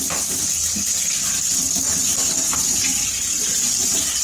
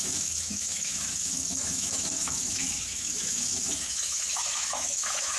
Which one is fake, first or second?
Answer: second